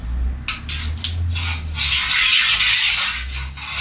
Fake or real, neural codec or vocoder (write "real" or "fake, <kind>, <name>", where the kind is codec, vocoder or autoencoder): real